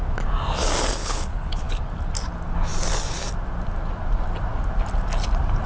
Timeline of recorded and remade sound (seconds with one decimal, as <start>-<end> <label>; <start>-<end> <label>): 0.0-1.0 recorded; 1.0-1.7 remade; 1.7-5.7 recorded